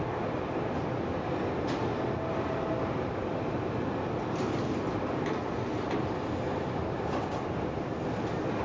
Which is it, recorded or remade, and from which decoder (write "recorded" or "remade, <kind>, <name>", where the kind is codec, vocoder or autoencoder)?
recorded